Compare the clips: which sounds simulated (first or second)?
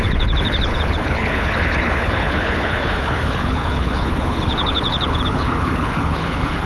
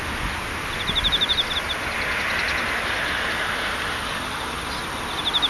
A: first